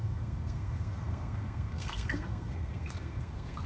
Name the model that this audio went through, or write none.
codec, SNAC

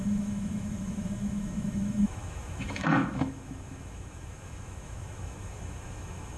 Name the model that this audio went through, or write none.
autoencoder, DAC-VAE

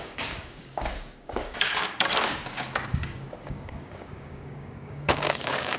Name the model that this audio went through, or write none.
codec, DAC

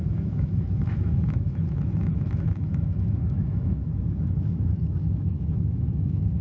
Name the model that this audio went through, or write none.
autoencoder, DAC-VAE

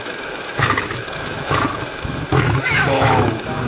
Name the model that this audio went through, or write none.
autoencoder, DAC-VAE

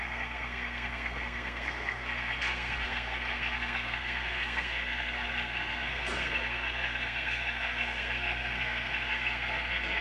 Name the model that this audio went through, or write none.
codec, SNAC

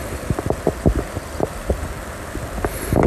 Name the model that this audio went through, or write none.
vocoder, BigVGAN v2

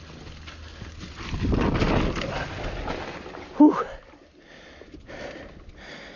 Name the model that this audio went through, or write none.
none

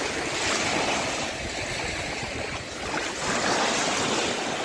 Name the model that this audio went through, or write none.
none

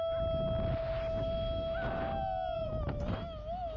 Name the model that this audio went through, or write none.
none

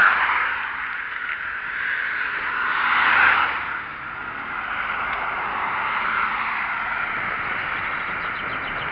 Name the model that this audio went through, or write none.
none